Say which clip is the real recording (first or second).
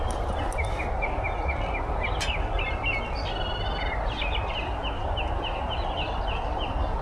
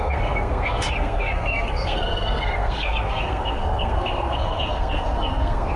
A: first